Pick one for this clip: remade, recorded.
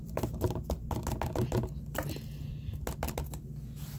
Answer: recorded